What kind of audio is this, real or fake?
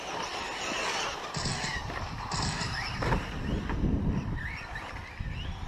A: real